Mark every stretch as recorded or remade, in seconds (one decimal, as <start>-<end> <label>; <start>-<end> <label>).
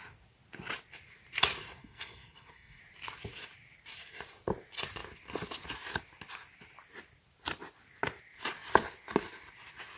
0.0-1.8 recorded; 1.8-2.8 remade; 2.8-10.0 recorded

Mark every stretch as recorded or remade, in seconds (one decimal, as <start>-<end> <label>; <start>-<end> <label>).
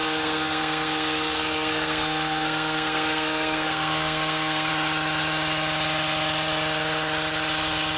0.0-4.7 remade; 4.7-8.0 recorded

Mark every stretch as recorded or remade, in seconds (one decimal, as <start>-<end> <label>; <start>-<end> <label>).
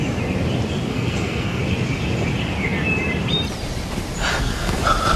0.0-0.9 recorded; 0.9-1.6 remade; 1.6-4.3 recorded; 4.3-4.8 remade; 4.8-5.2 recorded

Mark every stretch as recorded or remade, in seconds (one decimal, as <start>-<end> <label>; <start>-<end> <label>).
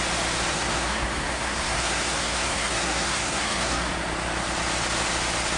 0.0-0.5 recorded; 0.5-3.9 remade; 3.9-5.6 recorded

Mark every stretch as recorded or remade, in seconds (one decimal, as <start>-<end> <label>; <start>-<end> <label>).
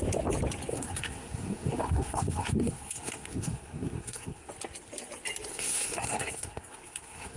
0.0-0.7 recorded; 0.7-4.5 remade; 4.5-5.5 recorded; 5.5-7.4 remade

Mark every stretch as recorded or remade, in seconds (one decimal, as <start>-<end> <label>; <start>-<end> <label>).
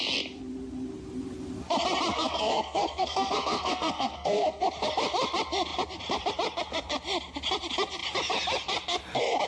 0.0-2.1 recorded; 2.1-4.6 remade; 4.6-9.5 recorded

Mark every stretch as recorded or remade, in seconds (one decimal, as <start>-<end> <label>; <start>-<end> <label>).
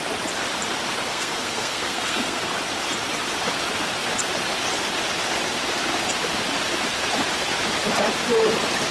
0.0-1.1 recorded; 1.1-2.5 remade; 2.5-8.9 recorded